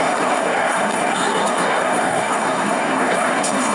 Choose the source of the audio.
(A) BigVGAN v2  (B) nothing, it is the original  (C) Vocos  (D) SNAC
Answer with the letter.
D